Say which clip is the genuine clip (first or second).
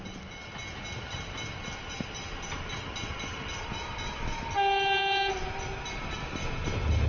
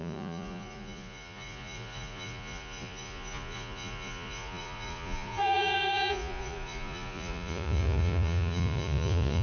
first